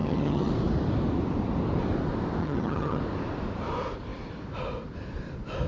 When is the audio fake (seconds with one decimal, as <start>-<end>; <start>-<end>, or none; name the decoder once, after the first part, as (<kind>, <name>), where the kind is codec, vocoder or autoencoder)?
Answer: 0.0-0.5 (vocoder, HiFi-GAN); 2.4-3.0